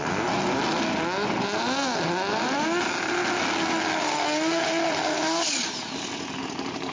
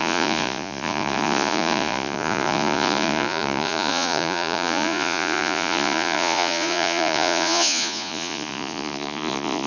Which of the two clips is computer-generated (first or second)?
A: second